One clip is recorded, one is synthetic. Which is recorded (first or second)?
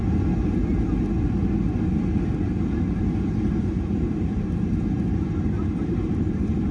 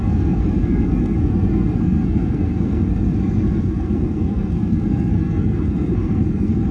first